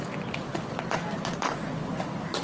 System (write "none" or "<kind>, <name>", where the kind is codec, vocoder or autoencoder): none